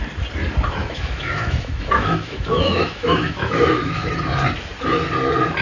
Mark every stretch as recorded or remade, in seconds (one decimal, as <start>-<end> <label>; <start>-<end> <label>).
0.0-0.8 recorded; 0.8-4.2 remade; 4.2-5.6 recorded